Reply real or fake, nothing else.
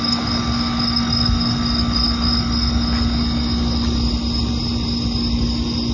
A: real